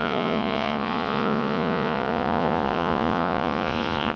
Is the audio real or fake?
fake